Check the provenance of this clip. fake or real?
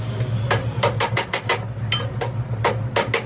real